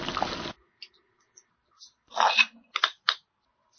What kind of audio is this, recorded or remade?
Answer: recorded